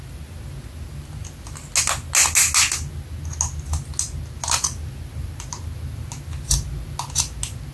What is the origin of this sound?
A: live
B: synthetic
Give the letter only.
A